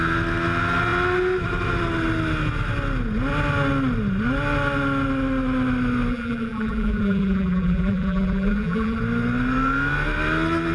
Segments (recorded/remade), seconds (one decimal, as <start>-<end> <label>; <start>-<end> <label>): 0.0-6.1 recorded; 6.1-9.0 remade; 9.0-10.7 recorded